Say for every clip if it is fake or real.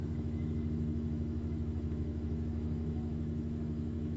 fake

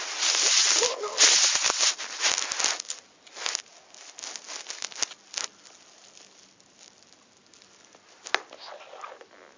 real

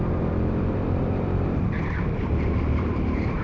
fake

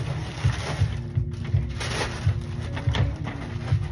real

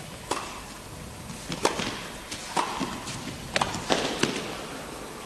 real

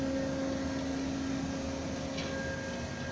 real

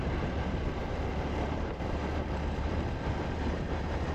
fake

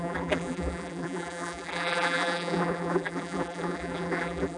fake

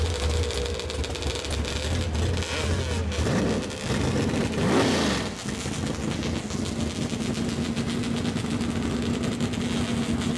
real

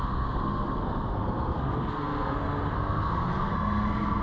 fake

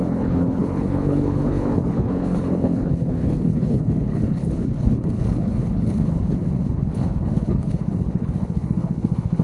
fake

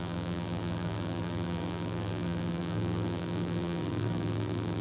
fake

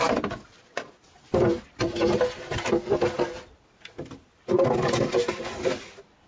real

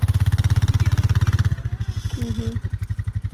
real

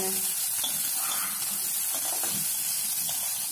real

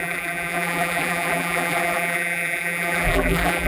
fake